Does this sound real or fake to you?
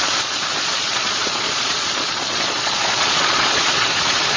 fake